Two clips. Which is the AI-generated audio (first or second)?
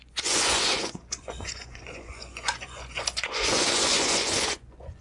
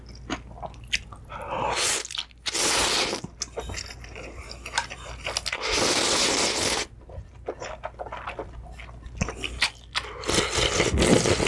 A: first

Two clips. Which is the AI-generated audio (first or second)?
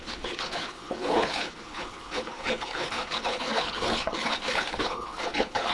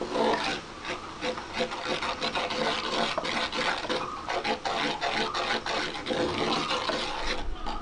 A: first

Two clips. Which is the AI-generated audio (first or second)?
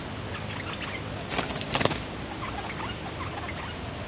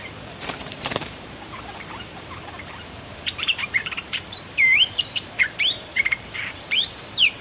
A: second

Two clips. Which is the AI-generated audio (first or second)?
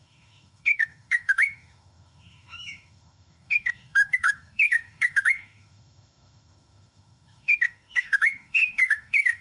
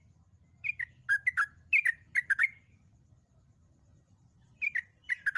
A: first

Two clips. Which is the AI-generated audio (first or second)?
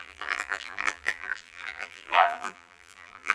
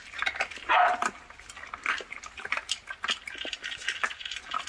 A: first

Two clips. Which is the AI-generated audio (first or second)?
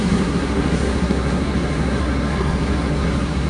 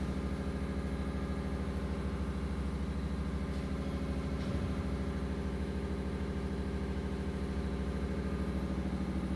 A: first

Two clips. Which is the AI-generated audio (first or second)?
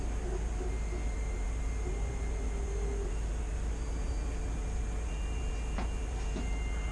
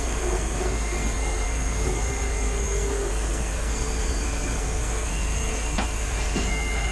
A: second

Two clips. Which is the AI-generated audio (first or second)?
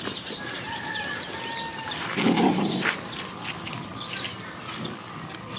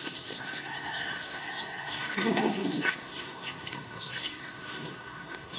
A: second